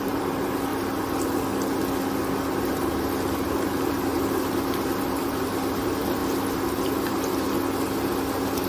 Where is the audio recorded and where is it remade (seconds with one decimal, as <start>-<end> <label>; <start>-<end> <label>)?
0.0-0.7 remade; 0.7-2.7 recorded; 2.7-6.2 remade; 6.2-8.7 recorded